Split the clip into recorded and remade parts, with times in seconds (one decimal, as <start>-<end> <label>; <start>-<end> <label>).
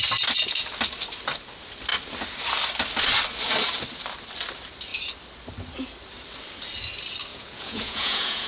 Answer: 0.0-7.3 recorded; 7.3-8.5 remade